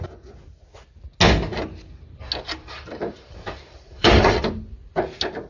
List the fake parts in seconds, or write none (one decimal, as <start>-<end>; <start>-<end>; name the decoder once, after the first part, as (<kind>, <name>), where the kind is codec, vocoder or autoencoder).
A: 2.6-4.3 (vocoder, BigVGAN v2)